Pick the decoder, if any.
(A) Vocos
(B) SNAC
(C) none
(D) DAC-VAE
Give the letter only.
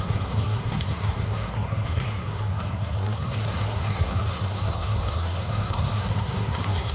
B